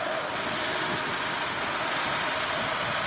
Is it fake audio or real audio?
real